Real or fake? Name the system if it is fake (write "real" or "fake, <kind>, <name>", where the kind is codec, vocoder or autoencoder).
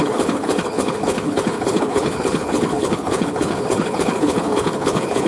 fake, codec, HILCodec